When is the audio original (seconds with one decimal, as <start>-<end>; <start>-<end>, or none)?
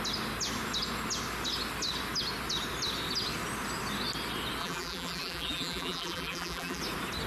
0.0-4.6; 6.8-7.3